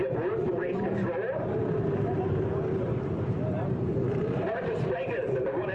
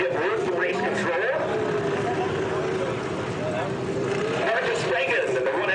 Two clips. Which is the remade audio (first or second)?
first